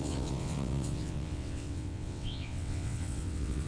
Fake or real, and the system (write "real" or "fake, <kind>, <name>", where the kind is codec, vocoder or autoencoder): fake, vocoder, WaveNeXt